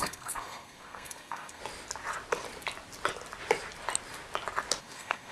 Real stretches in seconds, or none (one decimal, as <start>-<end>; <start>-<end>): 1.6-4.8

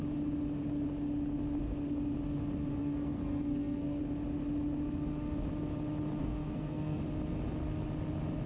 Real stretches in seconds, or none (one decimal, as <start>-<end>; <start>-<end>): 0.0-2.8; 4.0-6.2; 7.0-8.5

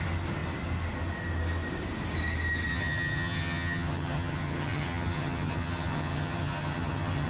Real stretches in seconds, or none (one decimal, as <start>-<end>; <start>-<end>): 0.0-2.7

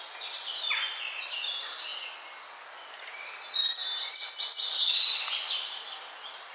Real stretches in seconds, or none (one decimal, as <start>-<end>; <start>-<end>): 0.0-6.5

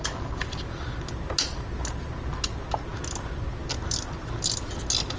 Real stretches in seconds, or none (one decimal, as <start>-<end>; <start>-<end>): 0.0-5.2

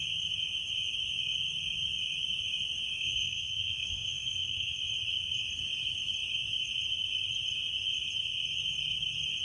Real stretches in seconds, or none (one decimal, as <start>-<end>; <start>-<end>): 0.0-2.9; 4.8-9.4

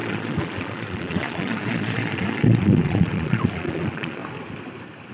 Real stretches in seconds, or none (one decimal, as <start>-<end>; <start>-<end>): 4.2-5.1

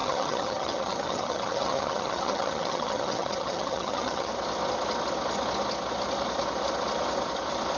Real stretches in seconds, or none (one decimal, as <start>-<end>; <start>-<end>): 4.3-7.8